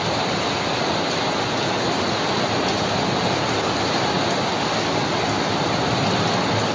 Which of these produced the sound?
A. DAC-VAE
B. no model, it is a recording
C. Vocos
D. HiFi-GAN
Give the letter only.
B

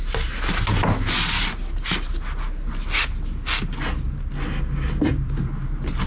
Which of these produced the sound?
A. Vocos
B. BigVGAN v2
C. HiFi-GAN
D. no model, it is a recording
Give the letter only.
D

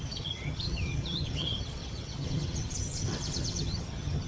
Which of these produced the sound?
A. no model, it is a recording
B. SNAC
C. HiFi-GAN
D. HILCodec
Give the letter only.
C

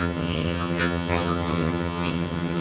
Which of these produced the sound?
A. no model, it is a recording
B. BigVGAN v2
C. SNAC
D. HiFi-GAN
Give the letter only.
D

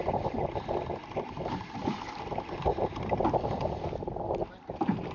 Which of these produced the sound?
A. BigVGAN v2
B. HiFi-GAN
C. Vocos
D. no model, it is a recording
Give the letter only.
D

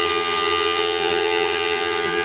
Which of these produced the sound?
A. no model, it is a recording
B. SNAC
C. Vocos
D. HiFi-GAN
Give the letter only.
D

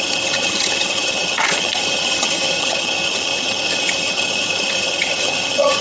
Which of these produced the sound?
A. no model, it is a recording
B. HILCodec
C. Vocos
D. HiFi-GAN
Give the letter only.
D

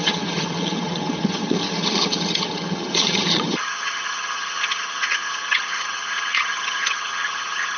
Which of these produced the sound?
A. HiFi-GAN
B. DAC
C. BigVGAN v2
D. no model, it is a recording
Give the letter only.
A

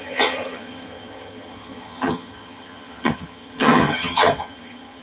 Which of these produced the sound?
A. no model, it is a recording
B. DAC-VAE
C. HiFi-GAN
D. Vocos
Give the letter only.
C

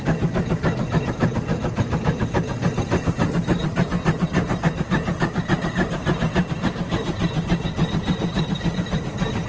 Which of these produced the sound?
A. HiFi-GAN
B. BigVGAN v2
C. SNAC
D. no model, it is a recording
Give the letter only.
D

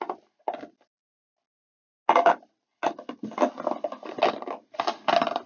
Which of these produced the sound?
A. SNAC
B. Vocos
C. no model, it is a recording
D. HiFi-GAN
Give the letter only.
C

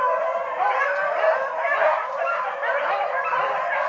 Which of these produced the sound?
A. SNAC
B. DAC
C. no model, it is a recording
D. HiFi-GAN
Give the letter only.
C